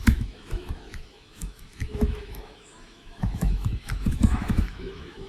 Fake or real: fake